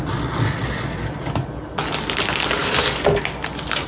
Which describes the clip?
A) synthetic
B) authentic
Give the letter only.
B